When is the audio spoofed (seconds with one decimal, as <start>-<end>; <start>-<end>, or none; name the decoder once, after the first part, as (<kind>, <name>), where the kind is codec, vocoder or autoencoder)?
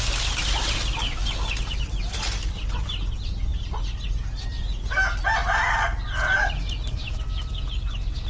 none